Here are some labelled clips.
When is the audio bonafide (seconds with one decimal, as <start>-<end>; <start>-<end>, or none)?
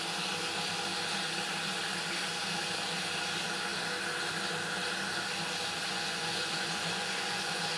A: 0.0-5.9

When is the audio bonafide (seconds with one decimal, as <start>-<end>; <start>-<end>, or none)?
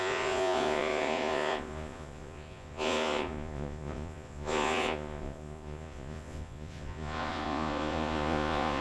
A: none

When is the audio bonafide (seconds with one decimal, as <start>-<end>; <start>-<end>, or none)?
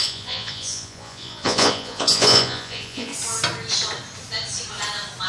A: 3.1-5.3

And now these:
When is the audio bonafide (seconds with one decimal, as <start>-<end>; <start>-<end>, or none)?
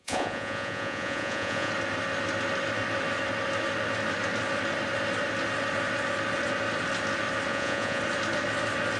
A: 1.7-7.5; 8.0-9.0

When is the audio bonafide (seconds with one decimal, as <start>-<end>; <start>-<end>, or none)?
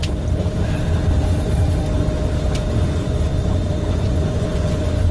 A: 0.0-2.7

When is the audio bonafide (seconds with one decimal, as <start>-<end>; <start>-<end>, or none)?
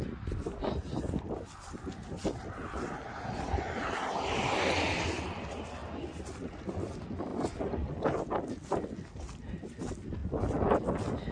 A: 0.0-11.3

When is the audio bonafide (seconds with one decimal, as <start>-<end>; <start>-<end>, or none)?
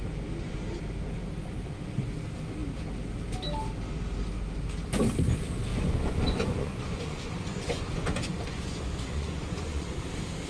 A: 0.0-5.7; 10.0-10.5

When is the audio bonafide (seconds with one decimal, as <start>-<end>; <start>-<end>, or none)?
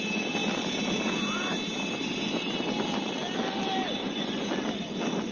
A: 0.0-4.0; 4.5-5.3